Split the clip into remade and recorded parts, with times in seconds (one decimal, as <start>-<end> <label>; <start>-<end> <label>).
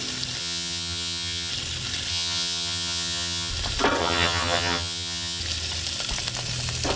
0.0-0.4 recorded; 0.4-1.5 remade; 1.5-2.1 recorded; 2.1-3.5 remade; 3.5-4.0 recorded; 4.0-5.4 remade; 5.4-7.0 recorded